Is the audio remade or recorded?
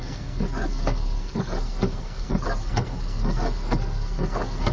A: remade